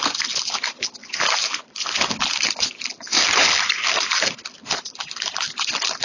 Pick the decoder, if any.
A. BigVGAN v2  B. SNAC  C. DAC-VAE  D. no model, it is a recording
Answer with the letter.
D